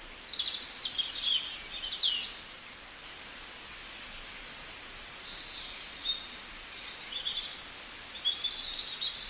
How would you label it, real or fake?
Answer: real